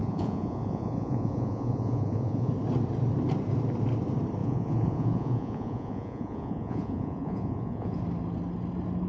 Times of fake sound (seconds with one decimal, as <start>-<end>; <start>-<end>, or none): 0.0-2.5; 4.4-8.0